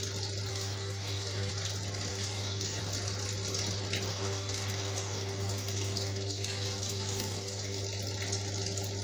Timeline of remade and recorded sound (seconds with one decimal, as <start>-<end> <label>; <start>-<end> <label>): 0.0-0.5 recorded; 0.5-1.5 remade; 1.5-2.1 recorded; 2.1-2.8 remade; 2.8-4.1 recorded; 4.1-7.8 remade; 7.8-9.0 recorded